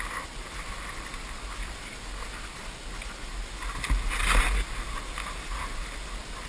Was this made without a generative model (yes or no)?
yes